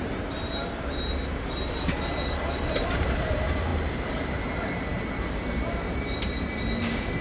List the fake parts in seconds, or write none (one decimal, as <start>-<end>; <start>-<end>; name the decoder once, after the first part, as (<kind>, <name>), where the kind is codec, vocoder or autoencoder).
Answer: 0.0-7.2 (vocoder, BigVGAN v2)